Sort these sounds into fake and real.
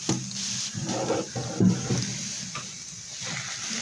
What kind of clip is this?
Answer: real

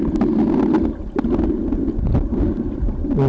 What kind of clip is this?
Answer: real